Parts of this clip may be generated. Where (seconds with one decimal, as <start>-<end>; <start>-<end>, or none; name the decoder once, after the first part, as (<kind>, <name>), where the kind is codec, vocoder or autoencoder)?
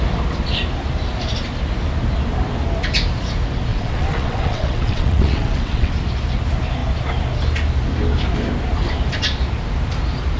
3.7-5.9 (vocoder, WaveNeXt)